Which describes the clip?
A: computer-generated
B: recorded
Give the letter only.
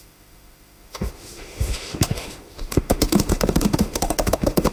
A